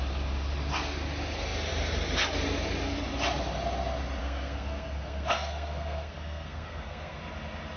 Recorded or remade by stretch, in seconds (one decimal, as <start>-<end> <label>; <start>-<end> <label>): 0.0-4.2 recorded; 4.2-7.2 remade; 7.2-7.8 recorded